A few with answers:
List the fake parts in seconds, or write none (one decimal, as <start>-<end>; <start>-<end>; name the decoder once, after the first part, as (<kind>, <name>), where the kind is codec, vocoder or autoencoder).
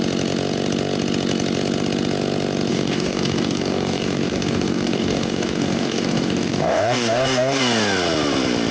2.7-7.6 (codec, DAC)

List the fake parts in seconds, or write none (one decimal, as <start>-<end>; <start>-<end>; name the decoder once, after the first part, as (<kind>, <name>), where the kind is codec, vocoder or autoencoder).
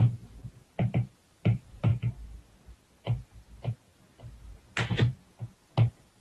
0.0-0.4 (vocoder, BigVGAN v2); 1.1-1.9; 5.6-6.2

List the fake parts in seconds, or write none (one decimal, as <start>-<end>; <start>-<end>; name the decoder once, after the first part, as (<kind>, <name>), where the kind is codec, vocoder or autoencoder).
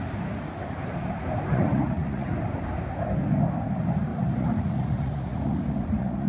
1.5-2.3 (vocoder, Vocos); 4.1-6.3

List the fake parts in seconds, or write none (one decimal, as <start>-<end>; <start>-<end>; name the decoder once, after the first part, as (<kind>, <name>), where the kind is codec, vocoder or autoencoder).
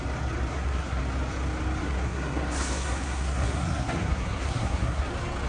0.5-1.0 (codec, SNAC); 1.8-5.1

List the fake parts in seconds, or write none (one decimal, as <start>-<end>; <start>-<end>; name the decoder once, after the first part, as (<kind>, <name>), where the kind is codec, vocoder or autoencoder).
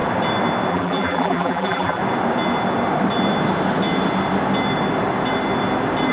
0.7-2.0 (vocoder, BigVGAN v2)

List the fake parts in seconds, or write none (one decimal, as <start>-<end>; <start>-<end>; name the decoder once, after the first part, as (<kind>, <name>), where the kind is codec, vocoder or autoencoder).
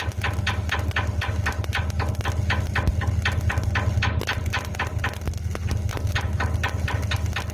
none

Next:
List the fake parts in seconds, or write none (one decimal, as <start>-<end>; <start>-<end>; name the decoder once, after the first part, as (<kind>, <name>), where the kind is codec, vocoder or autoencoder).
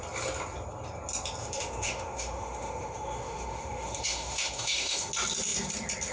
1.4-5.1 (autoencoder, DAC-VAE)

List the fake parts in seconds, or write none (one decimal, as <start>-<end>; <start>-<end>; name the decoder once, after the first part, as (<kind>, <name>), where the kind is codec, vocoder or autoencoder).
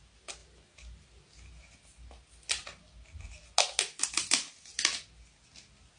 none